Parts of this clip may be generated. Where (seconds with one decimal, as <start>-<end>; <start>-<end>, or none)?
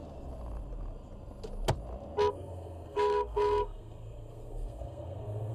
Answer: 2.3-5.5